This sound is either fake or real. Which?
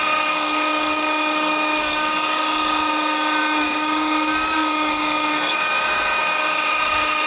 fake